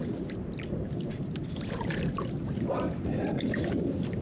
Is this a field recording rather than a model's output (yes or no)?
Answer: yes